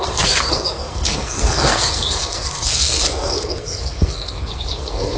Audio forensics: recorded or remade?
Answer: remade